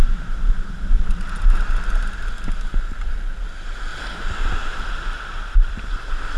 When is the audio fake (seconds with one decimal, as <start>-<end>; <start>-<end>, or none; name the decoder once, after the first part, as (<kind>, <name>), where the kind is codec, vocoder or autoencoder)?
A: 0.0-3.9 (vocoder, BigVGAN v2); 4.5-6.4